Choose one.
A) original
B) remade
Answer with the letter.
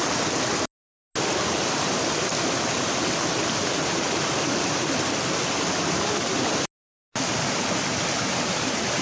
A